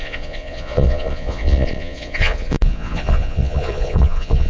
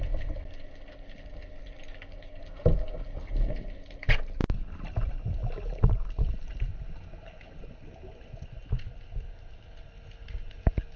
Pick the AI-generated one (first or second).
first